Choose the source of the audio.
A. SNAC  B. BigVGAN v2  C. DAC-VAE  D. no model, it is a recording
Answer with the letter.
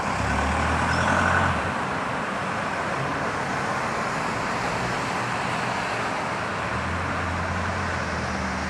D